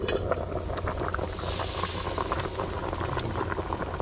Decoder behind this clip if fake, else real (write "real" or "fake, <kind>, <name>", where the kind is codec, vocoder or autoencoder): real